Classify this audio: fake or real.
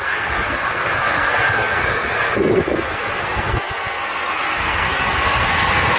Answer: fake